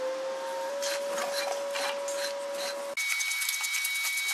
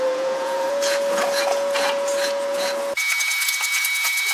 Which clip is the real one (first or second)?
first